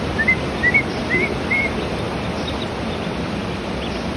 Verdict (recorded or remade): recorded